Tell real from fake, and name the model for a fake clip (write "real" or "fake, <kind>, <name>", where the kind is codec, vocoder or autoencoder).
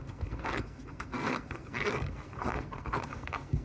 fake, codec, SNAC